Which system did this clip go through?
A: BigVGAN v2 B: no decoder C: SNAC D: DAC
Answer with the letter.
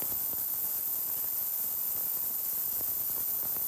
B